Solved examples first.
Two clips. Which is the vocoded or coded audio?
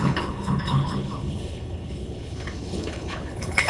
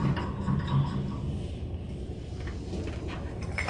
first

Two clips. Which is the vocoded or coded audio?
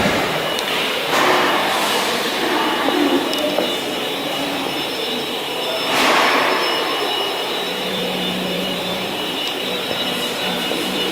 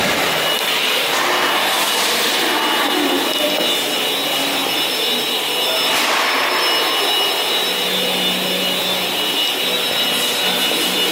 first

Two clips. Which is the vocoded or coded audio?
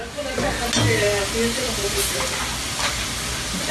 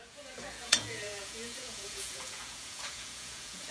second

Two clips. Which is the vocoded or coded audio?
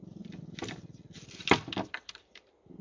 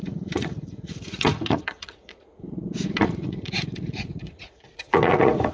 second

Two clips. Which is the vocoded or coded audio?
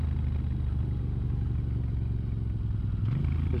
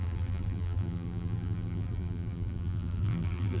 second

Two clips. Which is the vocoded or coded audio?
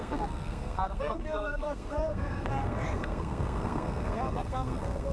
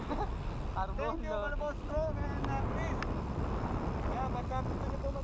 first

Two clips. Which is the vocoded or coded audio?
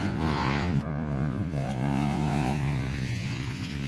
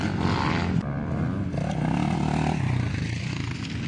first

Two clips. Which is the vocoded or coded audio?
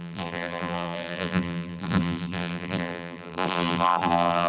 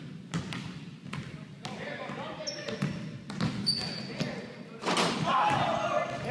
first